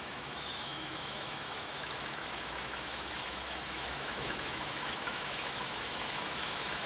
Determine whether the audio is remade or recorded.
remade